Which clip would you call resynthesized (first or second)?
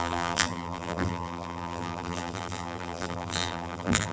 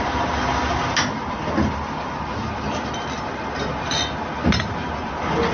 first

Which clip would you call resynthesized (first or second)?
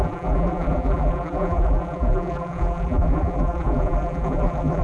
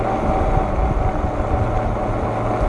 first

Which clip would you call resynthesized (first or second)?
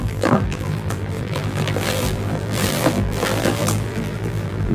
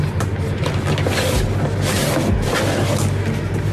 first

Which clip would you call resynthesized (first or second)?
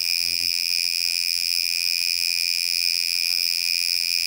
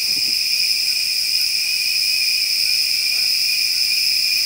first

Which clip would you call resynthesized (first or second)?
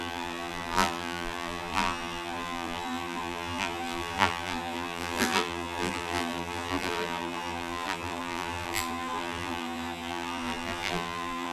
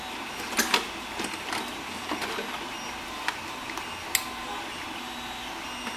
first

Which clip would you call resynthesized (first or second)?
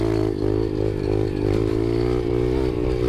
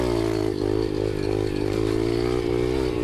first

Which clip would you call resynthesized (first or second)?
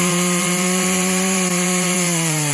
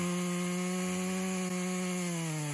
first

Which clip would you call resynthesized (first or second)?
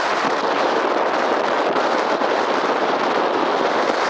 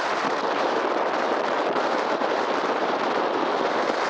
second